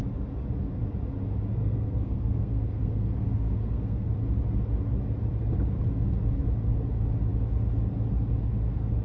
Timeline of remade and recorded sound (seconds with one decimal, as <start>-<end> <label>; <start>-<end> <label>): 0.0-1.6 recorded; 1.6-4.1 remade; 4.1-9.0 recorded